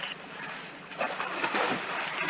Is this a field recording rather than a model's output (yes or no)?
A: no